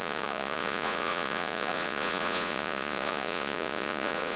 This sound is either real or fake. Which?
fake